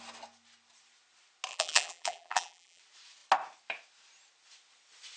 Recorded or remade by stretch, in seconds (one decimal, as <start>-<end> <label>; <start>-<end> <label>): 0.0-1.5 recorded; 1.5-2.8 remade; 2.8-5.2 recorded